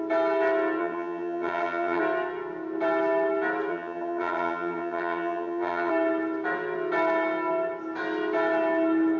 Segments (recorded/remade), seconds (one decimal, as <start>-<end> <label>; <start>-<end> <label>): 0.0-0.8 recorded; 0.8-2.0 remade; 2.0-3.7 recorded; 3.7-5.9 remade; 5.9-9.2 recorded